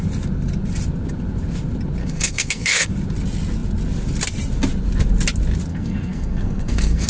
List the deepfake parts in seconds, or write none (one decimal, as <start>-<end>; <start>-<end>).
2.0-2.9; 5.7-7.1